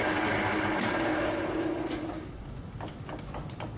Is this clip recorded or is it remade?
recorded